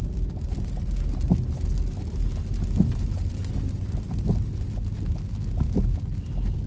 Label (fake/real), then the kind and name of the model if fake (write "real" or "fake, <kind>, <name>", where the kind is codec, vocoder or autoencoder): real